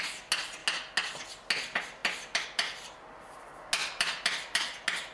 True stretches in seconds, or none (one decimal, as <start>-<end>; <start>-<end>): 0.0-2.0; 3.4-3.8; 4.6-5.1